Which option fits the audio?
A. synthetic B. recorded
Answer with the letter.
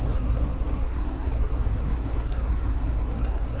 A